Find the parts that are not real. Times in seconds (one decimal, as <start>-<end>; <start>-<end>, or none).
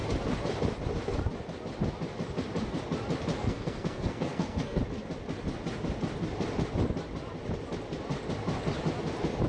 3.4-4.8